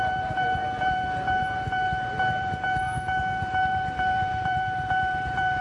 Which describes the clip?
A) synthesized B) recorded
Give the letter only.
A